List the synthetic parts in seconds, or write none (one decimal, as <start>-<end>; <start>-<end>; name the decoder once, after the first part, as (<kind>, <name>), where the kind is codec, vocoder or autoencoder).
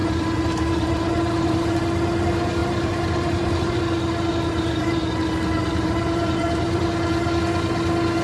0.0-1.7 (vocoder, BigVGAN v2); 2.6-3.8; 4.3-5.0; 5.6-6.8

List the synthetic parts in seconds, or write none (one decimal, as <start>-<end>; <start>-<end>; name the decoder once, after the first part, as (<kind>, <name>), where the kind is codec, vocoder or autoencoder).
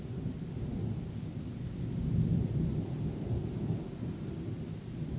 none